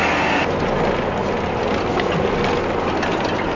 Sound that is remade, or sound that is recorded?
recorded